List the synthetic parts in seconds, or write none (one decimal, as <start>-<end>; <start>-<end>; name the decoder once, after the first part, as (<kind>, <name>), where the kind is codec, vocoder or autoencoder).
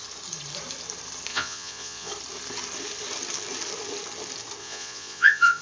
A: 1.3-2.1 (vocoder, Vocos); 4.6-5.6